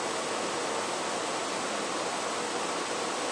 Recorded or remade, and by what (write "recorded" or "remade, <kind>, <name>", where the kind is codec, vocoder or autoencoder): recorded